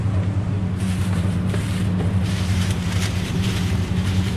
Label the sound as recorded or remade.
remade